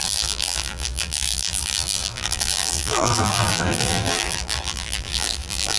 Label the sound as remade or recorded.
remade